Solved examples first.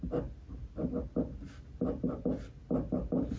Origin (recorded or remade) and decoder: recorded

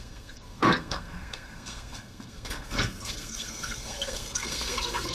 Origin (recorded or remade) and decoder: remade, codec, SNAC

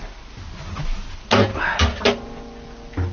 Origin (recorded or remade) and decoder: recorded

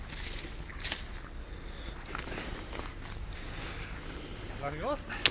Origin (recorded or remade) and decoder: recorded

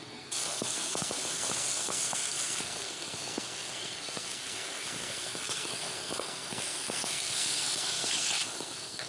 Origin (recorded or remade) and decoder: remade, codec, SNAC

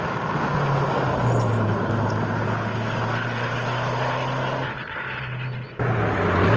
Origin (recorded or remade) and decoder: recorded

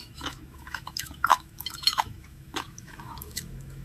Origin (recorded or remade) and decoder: remade, autoencoder, DAC-VAE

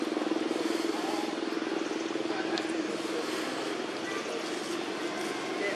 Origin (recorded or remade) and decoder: recorded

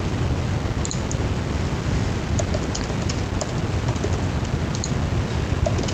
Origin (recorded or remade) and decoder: recorded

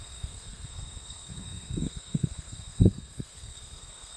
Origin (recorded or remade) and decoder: remade, codec, SNAC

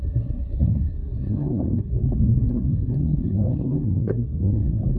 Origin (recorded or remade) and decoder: remade, codec, SNAC